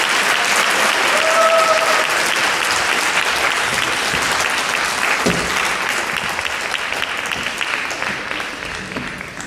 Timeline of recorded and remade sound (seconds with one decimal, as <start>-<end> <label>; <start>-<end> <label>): 0.0-9.5 recorded